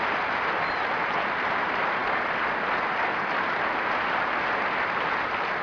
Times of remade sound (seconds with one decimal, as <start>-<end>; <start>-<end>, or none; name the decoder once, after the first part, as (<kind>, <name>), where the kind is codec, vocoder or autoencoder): none